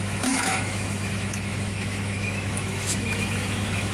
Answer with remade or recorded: remade